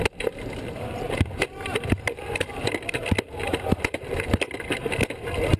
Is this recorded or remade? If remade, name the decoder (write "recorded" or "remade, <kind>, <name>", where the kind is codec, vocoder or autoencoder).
recorded